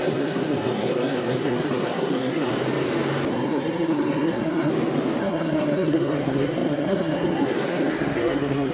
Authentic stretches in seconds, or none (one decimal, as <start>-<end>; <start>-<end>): 2.5-3.3; 4.7-5.2